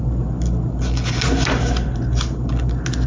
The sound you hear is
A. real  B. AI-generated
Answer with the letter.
A